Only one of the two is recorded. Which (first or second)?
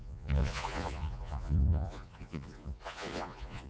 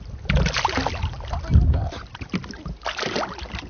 second